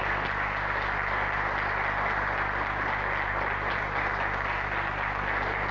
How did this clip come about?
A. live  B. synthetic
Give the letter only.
A